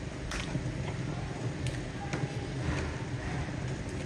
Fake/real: real